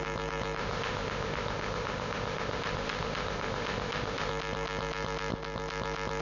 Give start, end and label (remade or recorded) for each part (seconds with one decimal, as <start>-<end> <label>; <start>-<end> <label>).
0.0-0.6 recorded; 0.6-4.3 remade; 4.3-6.2 recorded